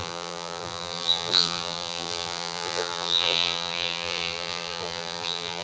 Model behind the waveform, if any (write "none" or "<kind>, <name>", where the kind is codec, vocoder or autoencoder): vocoder, BigVGAN v2